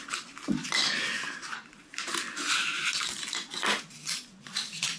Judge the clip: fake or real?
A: fake